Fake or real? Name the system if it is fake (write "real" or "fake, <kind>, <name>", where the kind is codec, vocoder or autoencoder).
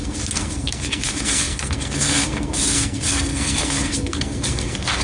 fake, codec, SNAC